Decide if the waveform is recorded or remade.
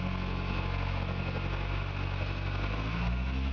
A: remade